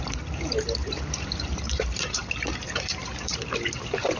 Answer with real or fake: fake